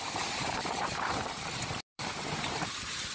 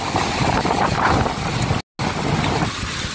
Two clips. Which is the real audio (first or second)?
second